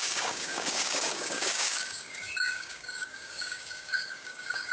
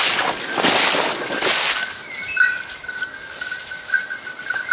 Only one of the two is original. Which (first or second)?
second